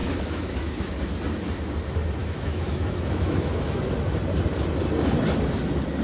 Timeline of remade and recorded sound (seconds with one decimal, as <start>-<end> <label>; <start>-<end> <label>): 0.0-0.9 remade; 0.9-2.2 recorded; 2.2-3.8 remade; 3.8-6.0 recorded